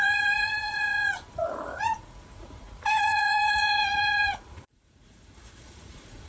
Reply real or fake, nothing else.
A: fake